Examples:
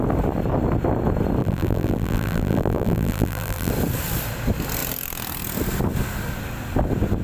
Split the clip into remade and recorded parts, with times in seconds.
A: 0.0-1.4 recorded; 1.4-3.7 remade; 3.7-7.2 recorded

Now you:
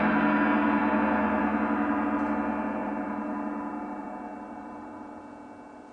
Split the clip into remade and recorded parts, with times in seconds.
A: 0.0-2.8 recorded; 2.8-5.2 remade; 5.2-5.9 recorded

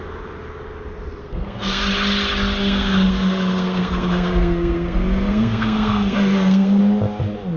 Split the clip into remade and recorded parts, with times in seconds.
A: 0.0-1.2 recorded; 1.2-1.8 remade; 1.8-2.6 recorded; 2.6-6.8 remade; 6.8-7.6 recorded